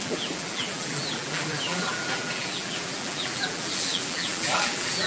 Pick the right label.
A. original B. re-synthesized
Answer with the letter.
B